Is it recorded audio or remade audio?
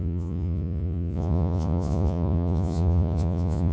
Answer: remade